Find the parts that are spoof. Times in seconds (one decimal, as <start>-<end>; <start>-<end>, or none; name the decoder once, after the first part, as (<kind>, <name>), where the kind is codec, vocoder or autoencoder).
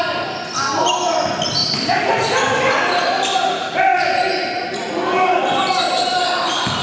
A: none